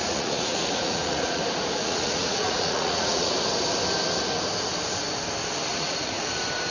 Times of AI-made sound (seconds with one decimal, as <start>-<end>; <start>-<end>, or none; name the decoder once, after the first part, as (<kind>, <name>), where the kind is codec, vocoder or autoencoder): 0.0-1.4 (vocoder, Vocos); 1.8-3.3; 5.7-6.3